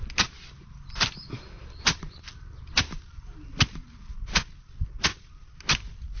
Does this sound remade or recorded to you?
recorded